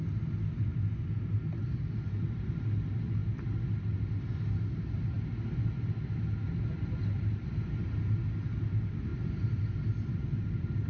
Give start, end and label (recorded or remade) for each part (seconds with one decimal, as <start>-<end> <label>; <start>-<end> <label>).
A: 0.0-10.9 recorded